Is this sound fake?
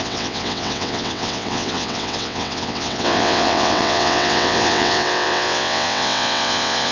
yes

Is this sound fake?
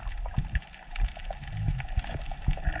no